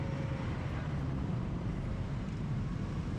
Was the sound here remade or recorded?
remade